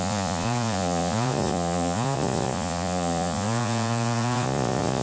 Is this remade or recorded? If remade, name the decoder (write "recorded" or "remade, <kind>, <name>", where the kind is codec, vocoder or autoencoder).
remade, vocoder, Vocos